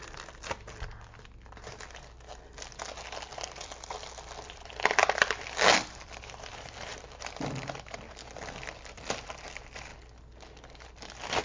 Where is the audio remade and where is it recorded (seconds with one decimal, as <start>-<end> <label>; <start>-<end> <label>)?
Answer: 0.0-3.3 recorded; 3.3-6.5 remade; 6.5-6.9 recorded; 6.9-9.3 remade; 9.3-11.4 recorded